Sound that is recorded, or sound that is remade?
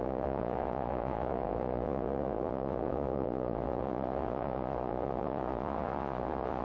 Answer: remade